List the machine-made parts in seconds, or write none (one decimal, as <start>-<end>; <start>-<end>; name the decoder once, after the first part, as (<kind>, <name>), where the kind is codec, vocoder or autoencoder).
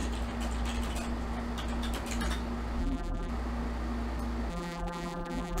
2.8-3.3 (vocoder, BigVGAN v2); 4.5-5.6